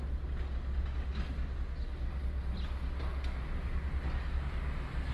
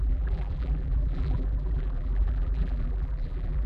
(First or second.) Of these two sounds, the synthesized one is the second